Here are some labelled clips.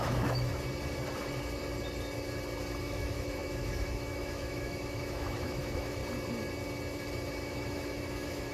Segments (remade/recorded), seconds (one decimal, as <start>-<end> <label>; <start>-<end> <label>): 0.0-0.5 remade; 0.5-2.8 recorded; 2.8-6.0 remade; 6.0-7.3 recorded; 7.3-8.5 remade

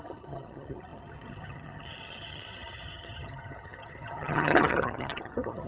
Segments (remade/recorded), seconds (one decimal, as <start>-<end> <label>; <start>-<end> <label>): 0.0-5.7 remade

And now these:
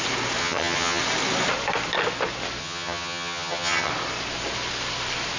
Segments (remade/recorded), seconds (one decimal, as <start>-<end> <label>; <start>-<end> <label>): 0.0-0.4 recorded; 0.4-1.0 remade; 1.0-2.6 recorded; 2.6-3.9 remade; 3.9-5.4 recorded